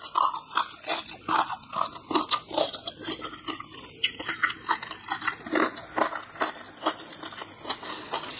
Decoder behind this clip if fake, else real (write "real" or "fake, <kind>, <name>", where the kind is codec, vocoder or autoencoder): real